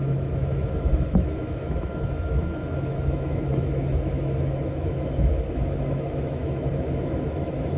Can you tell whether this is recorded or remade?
remade